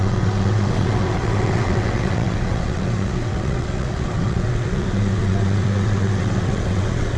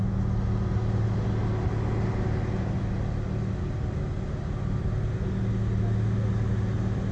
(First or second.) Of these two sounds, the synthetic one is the first